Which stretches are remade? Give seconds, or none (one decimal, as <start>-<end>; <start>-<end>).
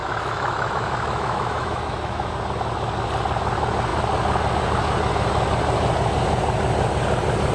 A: 0.0-2.3